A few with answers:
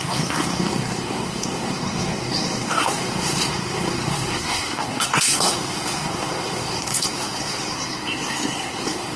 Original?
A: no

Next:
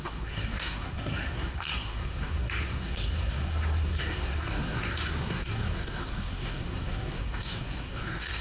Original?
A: no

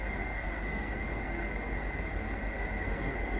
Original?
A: no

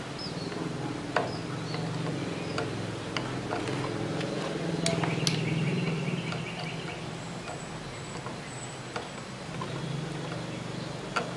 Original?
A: yes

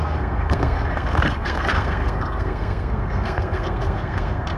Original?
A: no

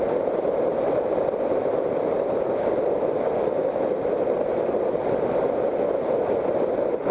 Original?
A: yes